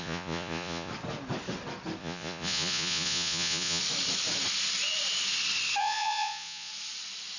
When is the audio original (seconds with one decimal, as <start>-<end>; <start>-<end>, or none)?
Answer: 0.9-2.0; 3.8-5.8; 6.7-7.4